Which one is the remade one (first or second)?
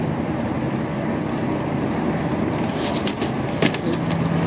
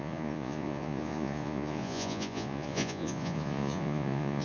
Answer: second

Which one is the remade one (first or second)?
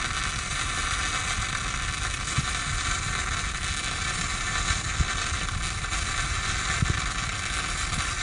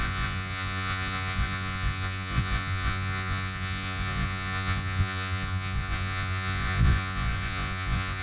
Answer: second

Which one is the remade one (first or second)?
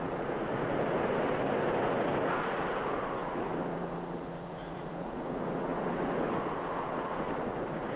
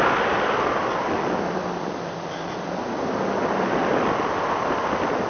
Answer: first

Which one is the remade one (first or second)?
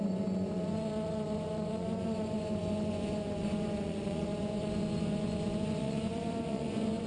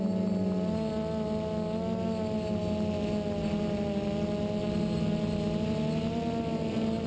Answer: first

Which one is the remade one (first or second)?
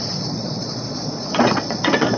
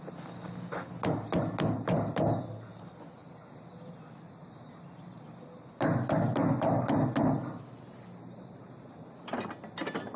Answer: first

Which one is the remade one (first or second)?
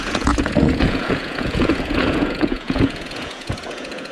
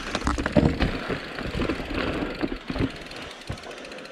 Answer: first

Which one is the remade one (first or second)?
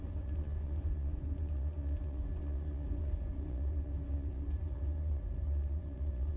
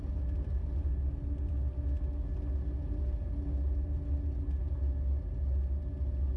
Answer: first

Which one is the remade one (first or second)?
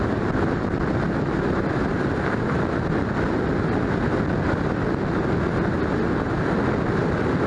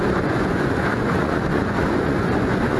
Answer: second